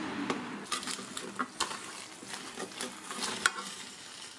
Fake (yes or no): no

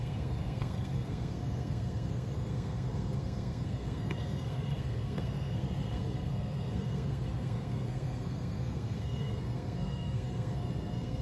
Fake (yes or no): yes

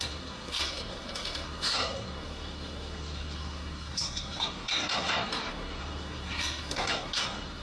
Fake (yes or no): yes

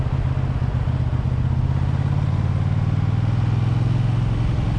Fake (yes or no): no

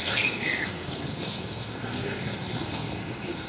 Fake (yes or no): yes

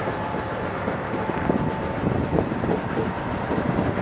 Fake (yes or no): no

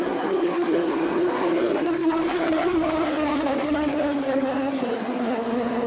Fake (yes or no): yes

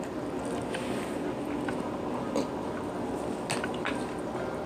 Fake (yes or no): no